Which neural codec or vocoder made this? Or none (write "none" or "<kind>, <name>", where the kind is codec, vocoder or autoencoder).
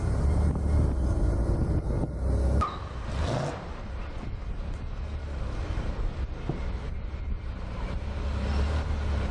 none